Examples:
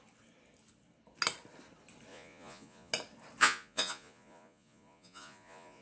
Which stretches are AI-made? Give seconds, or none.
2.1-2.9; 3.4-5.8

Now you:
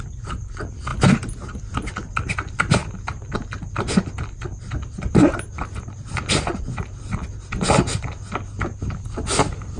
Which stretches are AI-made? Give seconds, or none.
none